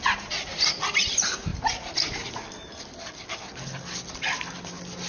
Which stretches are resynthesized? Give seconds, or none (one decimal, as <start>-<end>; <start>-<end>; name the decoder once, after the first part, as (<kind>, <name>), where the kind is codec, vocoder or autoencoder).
none